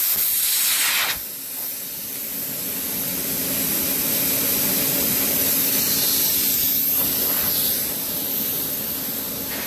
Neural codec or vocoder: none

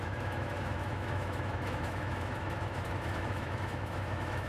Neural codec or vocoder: autoencoder, DAC-VAE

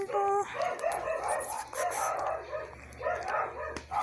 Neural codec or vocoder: none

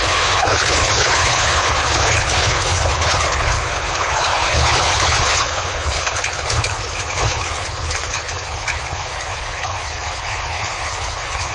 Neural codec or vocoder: codec, HILCodec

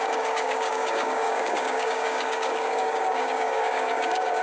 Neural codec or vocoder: codec, DAC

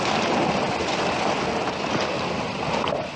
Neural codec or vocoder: none